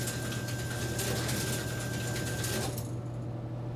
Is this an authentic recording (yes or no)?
yes